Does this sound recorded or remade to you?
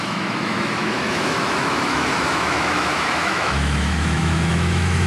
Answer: remade